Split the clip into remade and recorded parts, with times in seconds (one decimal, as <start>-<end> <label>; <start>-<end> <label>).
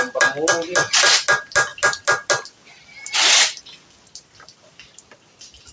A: 0.0-5.7 recorded